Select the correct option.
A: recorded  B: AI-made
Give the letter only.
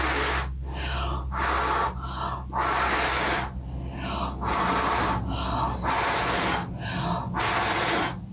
A